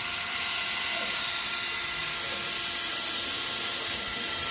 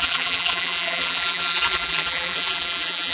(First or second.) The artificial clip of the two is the second